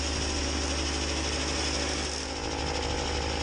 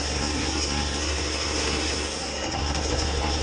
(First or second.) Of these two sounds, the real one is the first